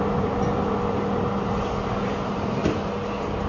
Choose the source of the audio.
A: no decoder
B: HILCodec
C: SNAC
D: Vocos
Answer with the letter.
A